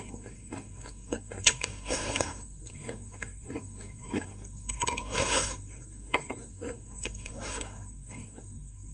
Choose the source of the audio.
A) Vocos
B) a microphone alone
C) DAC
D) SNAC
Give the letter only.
D